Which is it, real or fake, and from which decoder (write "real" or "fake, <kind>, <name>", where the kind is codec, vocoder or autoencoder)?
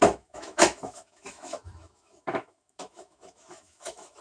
fake, autoencoder, DAC-VAE